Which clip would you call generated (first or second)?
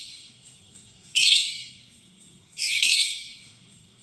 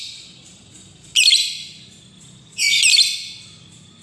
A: first